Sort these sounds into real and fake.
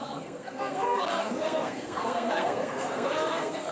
fake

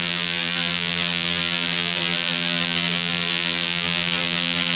fake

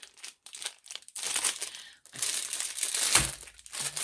real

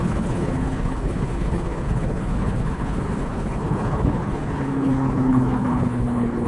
fake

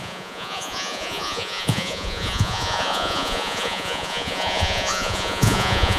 fake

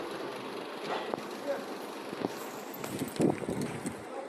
real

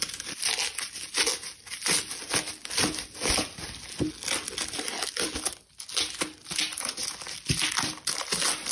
real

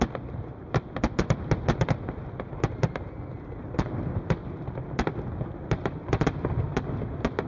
real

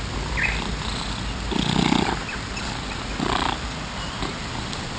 real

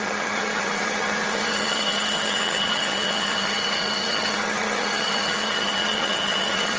fake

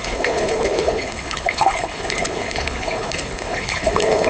fake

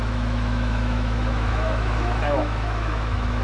fake